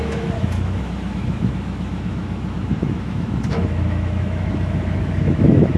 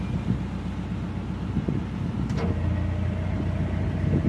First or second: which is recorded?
second